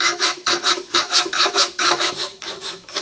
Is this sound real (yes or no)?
no